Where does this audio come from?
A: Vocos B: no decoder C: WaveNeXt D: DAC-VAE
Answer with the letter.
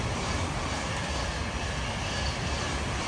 B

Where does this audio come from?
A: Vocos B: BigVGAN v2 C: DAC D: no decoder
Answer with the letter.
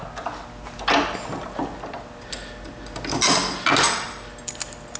D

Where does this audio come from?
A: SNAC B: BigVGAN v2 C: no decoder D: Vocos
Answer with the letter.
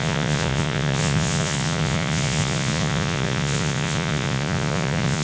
D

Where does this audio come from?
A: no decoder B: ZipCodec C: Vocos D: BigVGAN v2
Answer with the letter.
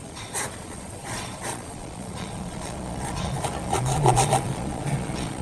C